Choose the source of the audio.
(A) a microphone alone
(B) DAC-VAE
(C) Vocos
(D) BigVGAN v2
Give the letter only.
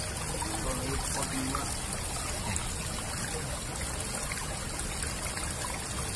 A